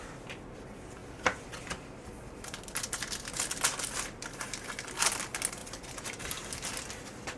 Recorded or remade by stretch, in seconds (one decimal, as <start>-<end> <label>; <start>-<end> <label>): 0.0-7.4 recorded